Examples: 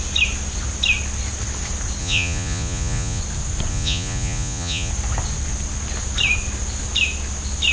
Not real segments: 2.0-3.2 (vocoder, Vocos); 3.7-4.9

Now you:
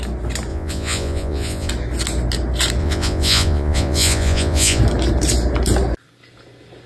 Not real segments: 0.5-1.7 (vocoder, Vocos); 2.8-4.8